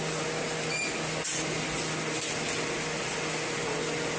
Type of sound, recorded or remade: recorded